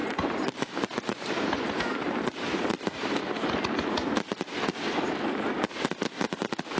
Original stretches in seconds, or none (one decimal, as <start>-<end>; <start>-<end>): 3.2-6.8